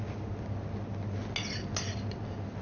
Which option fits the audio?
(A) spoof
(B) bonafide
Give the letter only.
B